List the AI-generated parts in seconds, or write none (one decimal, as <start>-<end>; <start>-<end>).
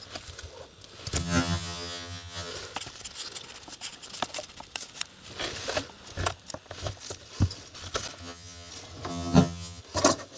1.2-2.5; 8.2-8.7; 9.1-9.8